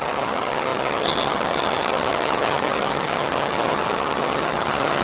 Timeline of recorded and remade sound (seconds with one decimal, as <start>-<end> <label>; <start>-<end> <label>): 0.0-5.0 remade